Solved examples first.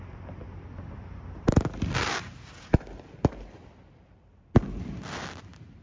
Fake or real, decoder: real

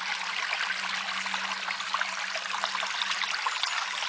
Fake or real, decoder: real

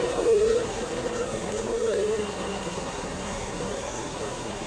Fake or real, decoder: fake, codec, SNAC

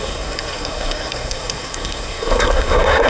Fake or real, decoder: fake, codec, SNAC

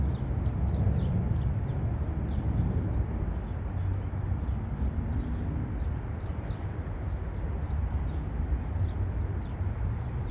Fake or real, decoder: real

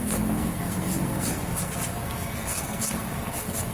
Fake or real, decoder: fake, codec, SNAC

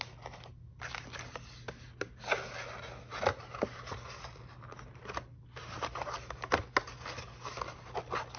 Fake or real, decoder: real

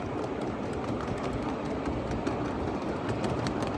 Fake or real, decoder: real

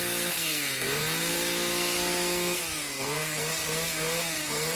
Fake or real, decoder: fake, codec, SNAC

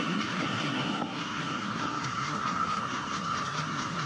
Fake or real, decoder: fake, codec, SNAC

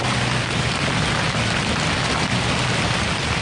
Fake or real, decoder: real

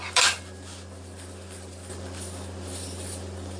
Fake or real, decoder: real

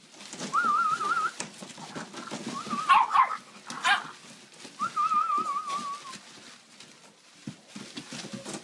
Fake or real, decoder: real